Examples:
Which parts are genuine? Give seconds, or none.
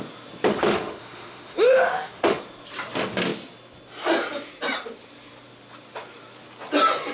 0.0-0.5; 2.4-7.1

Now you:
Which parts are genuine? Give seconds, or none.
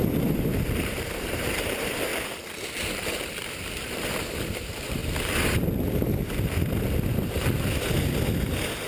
2.1-3.6; 5.0-8.9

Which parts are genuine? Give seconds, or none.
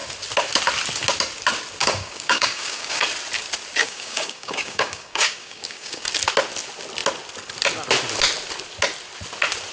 0.0-1.8; 3.0-3.8; 6.1-9.7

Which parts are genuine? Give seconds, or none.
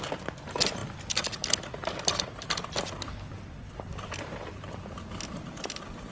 0.0-6.1